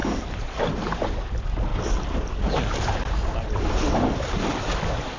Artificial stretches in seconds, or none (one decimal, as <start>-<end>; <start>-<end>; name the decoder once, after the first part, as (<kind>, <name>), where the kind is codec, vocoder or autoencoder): 0.0-0.6 (vocoder, BigVGAN v2); 1.7-2.4